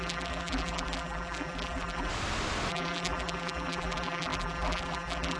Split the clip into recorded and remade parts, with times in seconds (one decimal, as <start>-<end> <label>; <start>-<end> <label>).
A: 0.0-2.1 remade; 2.1-2.7 recorded; 2.7-5.4 remade